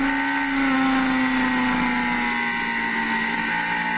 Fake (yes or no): no